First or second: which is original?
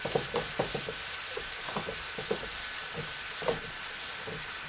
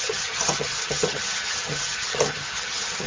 first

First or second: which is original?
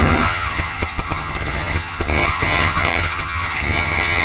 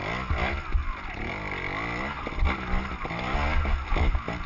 second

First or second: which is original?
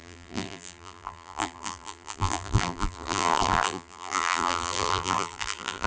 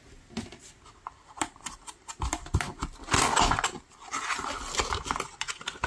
second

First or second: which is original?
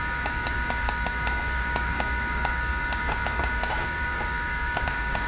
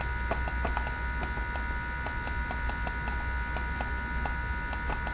second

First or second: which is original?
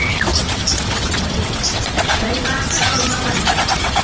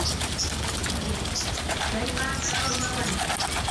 second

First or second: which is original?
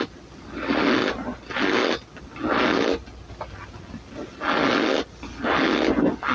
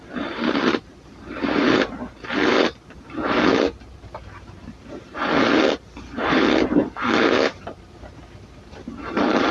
first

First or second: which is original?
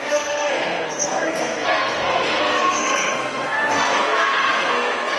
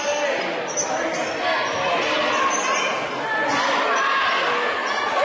second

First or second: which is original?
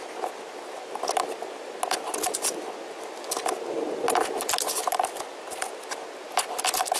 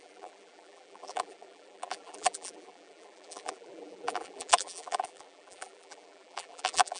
first